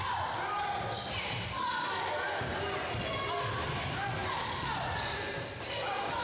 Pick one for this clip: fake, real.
real